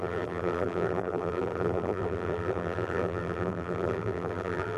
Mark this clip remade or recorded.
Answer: remade